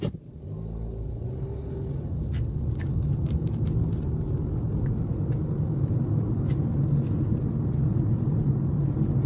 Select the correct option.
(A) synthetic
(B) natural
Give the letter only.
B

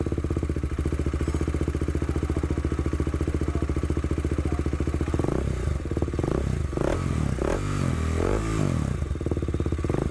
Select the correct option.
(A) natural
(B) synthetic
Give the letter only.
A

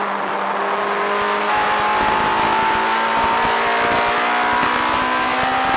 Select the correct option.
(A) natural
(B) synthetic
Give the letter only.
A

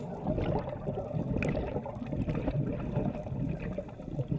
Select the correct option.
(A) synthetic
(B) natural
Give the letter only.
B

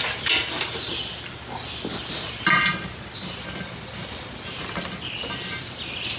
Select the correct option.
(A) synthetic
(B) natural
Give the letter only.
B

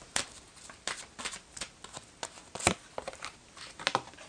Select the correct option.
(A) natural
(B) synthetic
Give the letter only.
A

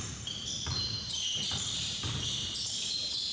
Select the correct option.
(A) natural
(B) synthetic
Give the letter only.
B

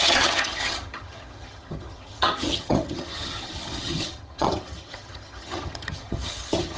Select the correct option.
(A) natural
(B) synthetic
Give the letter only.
B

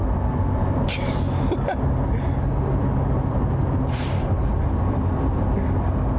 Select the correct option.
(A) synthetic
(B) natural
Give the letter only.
B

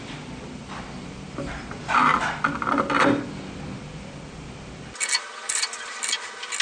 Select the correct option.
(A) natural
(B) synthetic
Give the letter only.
A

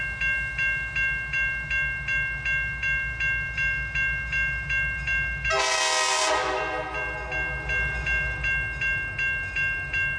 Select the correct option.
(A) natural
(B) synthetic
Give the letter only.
A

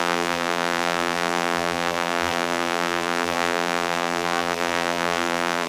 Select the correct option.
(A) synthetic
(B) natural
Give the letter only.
A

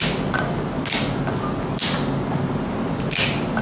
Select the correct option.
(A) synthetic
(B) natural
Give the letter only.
B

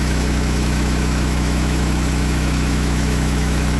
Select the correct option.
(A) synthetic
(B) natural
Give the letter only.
A